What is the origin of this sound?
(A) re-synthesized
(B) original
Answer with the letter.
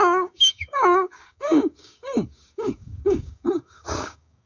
A